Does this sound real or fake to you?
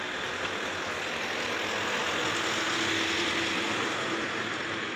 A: real